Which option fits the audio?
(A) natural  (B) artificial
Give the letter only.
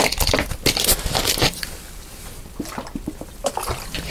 A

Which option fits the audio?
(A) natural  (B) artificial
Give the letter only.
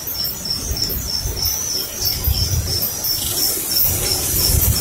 A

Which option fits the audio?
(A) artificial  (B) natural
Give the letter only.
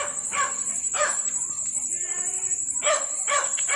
A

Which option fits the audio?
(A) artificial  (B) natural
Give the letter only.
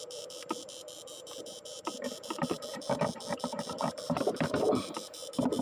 A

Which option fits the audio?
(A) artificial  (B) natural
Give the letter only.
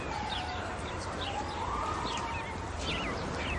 B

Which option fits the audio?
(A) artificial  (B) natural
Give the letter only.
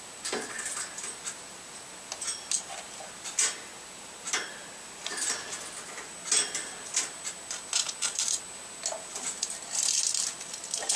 B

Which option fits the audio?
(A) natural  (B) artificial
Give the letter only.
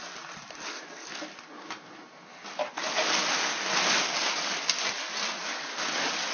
A